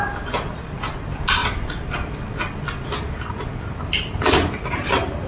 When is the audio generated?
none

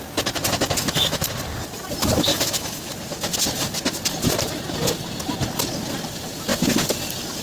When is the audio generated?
0.8-1.3 (autoencoder, DAC-VAE); 2.3-2.9

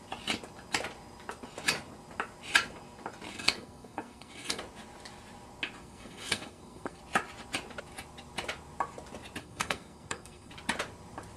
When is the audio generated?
3.3-4.6 (codec, SNAC); 5.8-7.0; 9.4-10.5